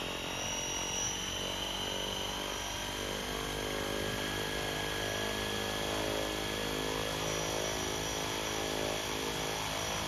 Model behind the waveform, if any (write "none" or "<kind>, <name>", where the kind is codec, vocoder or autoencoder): none